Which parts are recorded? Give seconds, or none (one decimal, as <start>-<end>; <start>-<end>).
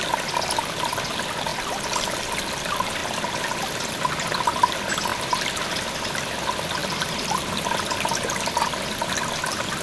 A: 0.0-1.5; 2.6-6.8; 7.5-9.8